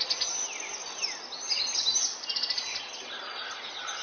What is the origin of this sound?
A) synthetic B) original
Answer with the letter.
B